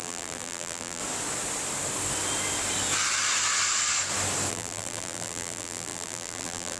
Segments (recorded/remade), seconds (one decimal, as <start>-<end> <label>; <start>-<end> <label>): 0.0-1.0 remade; 1.0-4.5 recorded; 4.5-6.8 remade